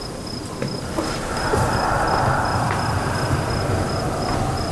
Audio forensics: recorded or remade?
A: recorded